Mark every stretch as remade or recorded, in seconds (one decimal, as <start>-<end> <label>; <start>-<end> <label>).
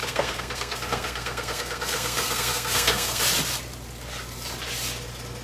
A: 0.0-3.2 remade; 3.2-5.4 recorded